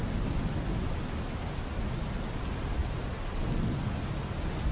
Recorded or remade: recorded